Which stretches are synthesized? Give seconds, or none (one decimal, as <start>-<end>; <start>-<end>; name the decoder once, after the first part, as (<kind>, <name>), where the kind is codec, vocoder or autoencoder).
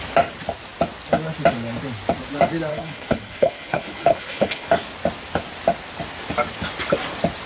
2.7-4.7 (codec, HILCodec)